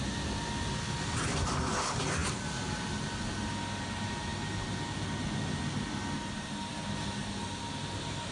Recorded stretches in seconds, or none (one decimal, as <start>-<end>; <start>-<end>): 0.0-2.2; 3.0-8.3